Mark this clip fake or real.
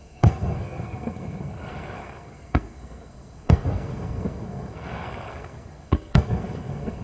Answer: fake